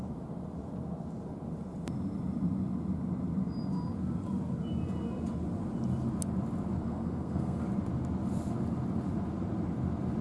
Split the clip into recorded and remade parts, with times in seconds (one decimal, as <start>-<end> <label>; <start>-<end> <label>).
0.0-6.8 recorded; 6.8-7.6 remade; 7.6-10.2 recorded

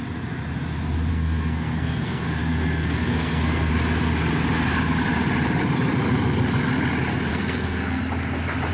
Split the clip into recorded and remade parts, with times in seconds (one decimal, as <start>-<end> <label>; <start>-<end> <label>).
0.0-1.1 recorded; 1.1-3.7 remade; 3.7-7.3 recorded; 7.3-8.0 remade; 8.0-8.7 recorded

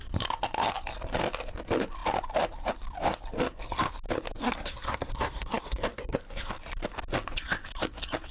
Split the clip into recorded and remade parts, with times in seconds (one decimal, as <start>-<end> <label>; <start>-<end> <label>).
0.0-4.4 recorded; 4.4-6.5 remade; 6.5-8.3 recorded

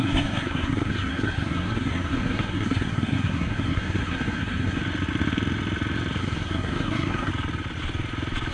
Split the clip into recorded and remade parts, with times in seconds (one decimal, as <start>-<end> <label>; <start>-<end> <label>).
0.0-4.8 remade; 4.8-6.2 recorded; 6.2-7.3 remade; 7.3-8.5 recorded

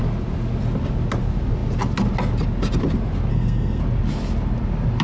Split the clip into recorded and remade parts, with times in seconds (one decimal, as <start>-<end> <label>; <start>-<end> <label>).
0.0-3.3 recorded; 3.3-3.8 remade; 3.8-5.0 recorded